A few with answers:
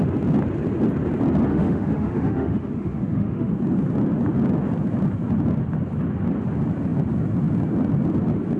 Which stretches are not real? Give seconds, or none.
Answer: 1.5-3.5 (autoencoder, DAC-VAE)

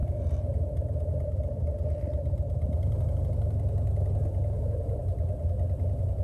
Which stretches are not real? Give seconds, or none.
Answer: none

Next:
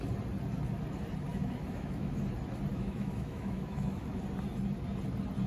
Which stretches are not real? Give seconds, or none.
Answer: 1.3-2.2 (autoencoder, DAC-VAE); 2.7-4.2